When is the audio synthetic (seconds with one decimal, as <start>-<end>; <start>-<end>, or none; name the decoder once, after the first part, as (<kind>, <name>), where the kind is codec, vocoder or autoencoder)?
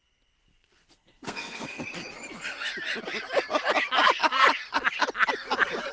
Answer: 0.5-1.8 (codec, SNAC)